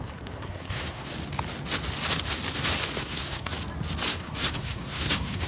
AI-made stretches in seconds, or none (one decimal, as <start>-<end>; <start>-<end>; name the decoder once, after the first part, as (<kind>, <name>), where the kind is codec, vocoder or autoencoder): 0.0-1.1 (codec, SNAC); 3.0-3.5; 4.1-5.5